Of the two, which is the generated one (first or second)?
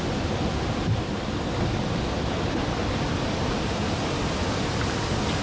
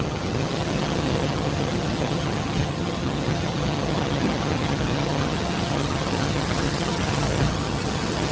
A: second